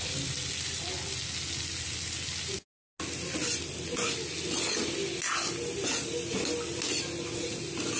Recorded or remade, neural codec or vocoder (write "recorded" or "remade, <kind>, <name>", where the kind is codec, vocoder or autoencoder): recorded